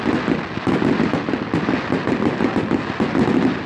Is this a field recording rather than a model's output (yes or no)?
yes